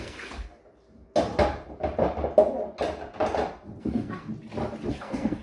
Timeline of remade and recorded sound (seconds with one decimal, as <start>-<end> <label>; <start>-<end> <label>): 0.0-0.6 remade; 0.6-3.8 recorded; 3.8-4.3 remade; 4.3-4.9 recorded; 4.9-5.4 remade